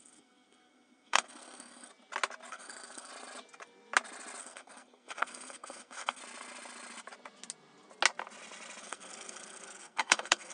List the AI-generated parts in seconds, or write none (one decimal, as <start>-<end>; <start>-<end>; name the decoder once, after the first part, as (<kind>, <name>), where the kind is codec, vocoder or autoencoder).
0.0-1.9 (codec, SNAC); 2.5-3.1; 4.4-6.2; 8.8-10.5